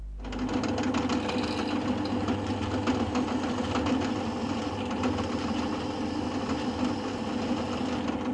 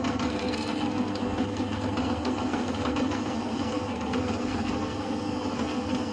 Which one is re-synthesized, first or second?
second